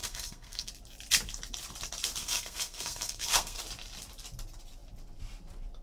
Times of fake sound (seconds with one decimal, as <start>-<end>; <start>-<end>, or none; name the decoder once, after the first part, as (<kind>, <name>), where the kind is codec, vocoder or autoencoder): 0.0-0.7 (codec, SNAC); 2.2-3.6

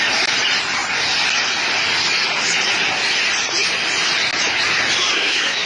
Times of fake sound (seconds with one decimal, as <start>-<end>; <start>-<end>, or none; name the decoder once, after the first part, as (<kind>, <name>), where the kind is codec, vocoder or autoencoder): 5.1-5.7 (codec, SNAC)

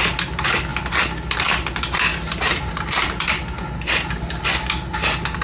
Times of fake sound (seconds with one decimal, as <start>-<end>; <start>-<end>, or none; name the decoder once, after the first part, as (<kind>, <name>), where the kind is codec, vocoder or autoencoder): none

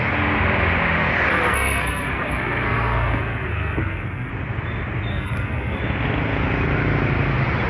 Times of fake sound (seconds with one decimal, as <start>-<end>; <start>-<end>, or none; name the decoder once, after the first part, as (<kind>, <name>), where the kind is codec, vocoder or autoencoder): 1.3-4.3 (codec, SNAC); 5.1-5.8